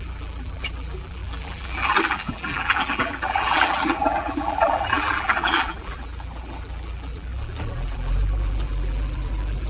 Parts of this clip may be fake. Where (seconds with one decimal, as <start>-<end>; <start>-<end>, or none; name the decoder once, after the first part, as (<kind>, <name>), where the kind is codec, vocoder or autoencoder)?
0.0-9.7 (vocoder, BigVGAN v2)